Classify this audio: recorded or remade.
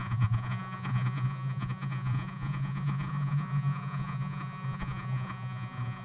remade